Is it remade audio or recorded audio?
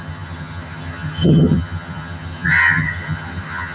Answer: remade